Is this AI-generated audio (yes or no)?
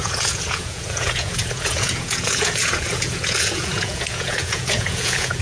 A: yes